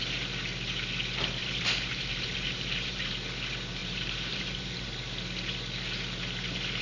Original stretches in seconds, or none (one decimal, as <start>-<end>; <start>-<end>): 0.0-1.4; 3.1-3.8; 4.9-6.8